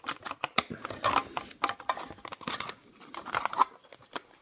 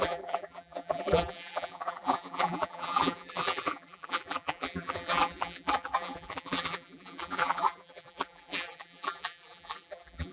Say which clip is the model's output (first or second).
second